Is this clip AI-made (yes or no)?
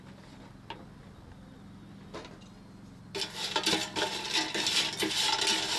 no